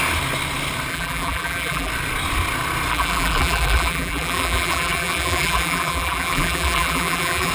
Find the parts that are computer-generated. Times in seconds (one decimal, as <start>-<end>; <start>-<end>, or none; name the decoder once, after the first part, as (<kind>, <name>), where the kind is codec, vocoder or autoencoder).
0.9-1.9 (vocoder, BigVGAN v2); 2.9-7.5